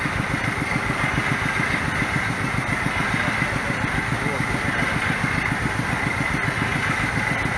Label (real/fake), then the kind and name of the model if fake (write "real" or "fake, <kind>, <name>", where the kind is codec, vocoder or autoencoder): real